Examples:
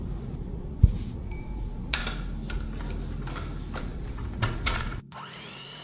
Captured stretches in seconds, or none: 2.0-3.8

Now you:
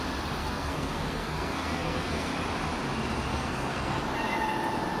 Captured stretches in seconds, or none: 0.0-0.4; 2.3-3.3; 4.0-5.0

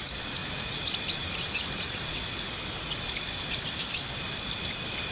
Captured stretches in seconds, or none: 0.0-5.1

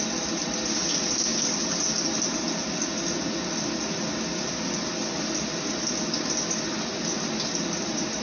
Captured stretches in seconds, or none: 0.0-8.2

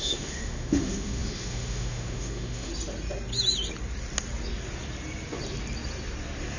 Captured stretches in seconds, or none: 2.7-6.6